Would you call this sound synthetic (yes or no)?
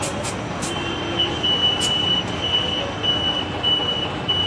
no